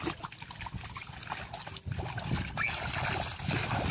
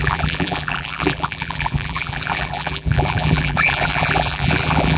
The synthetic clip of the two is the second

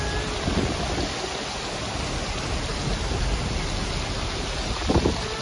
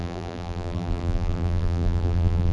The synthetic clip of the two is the second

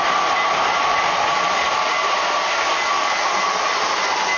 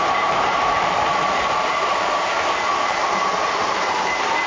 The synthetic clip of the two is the second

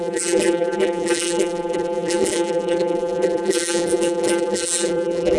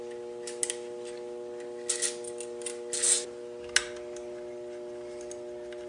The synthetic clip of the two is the first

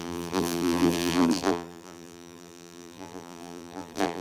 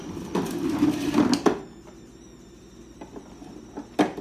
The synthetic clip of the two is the first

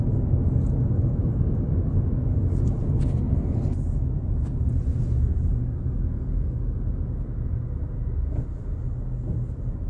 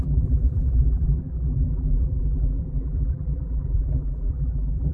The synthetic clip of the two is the second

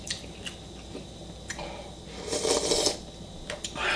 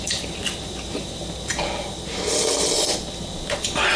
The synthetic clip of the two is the second